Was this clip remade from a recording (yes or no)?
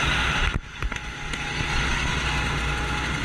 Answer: no